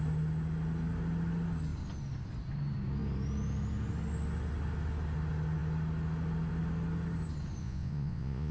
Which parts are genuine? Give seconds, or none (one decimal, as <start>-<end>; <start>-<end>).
0.0-7.6